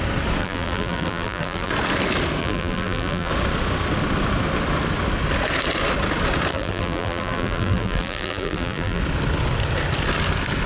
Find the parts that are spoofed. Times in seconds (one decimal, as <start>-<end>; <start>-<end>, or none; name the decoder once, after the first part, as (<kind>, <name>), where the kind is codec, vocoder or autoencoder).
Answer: 0.4-1.7 (vocoder, BigVGAN v2); 2.4-3.3; 6.5-9.0